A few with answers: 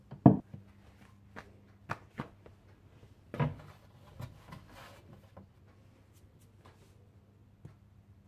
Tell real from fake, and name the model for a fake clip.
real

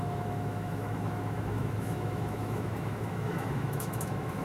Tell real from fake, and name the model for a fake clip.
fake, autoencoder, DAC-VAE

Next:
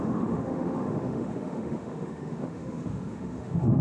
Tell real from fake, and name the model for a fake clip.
fake, autoencoder, DAC-VAE